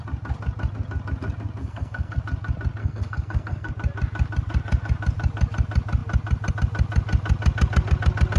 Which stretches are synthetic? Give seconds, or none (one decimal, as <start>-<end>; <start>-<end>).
1.6-2.2; 2.8-3.7